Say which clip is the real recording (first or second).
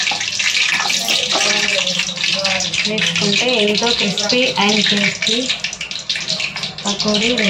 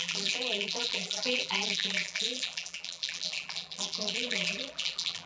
first